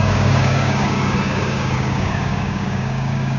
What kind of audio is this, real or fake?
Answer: fake